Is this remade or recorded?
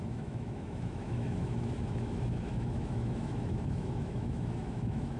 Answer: remade